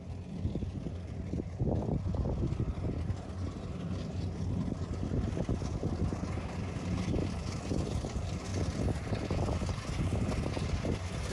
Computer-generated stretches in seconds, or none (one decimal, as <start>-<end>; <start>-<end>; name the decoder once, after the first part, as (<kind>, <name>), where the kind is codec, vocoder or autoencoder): none